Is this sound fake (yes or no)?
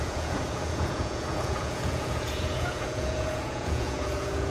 yes